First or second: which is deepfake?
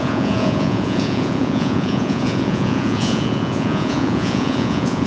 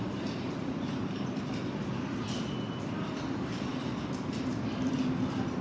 first